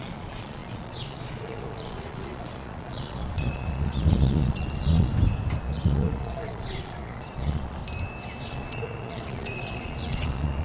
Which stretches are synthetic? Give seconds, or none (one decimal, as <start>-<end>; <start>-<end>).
0.0-5.1; 5.6-7.8; 8.4-10.6